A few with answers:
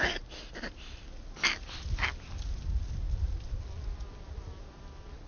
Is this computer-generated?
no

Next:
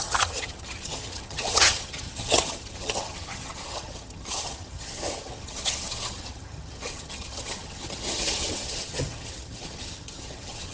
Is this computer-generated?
yes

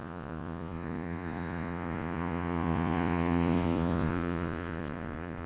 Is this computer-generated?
yes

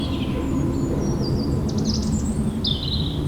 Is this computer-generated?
no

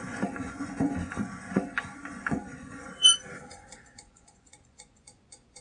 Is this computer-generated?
yes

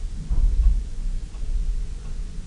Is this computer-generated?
yes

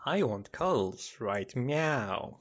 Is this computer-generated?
no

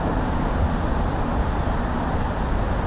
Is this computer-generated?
yes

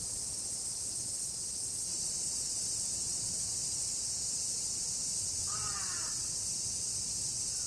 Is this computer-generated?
yes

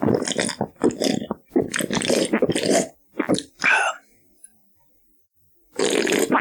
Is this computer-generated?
yes